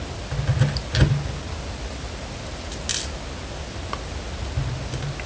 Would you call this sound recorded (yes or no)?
yes